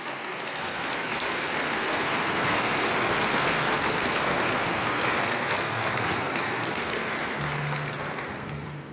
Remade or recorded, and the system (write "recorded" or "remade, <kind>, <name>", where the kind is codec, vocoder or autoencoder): remade, codec, SNAC